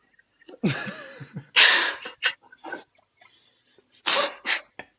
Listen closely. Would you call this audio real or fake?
real